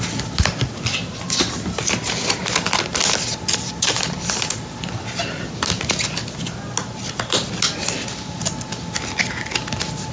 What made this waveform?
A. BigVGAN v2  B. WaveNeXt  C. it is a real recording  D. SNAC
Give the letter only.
C